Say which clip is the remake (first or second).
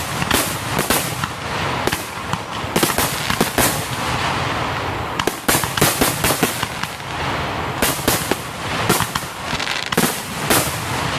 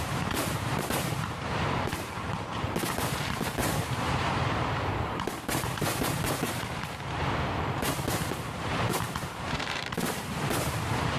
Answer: second